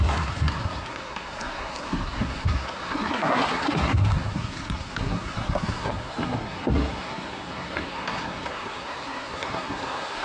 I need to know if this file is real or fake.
fake